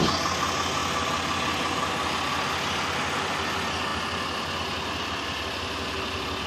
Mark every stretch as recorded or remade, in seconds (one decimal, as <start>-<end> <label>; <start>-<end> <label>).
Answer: 0.0-6.5 recorded